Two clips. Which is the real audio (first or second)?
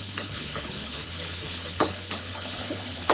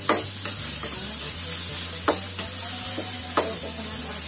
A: second